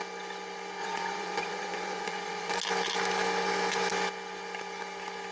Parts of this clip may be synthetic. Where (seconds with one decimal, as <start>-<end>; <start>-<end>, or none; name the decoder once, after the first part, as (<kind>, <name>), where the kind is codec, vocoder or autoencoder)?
0.8-2.6 (vocoder, Vocos)